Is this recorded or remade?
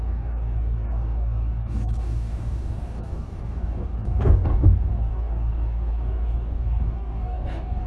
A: remade